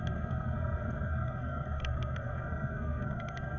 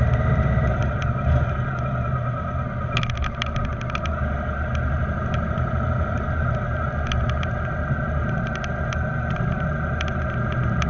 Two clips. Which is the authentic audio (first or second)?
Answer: second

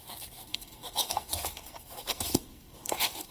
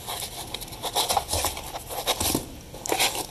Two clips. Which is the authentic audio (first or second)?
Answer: second